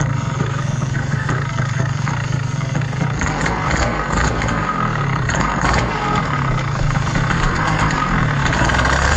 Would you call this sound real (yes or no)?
no